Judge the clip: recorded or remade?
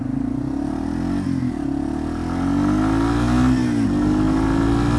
recorded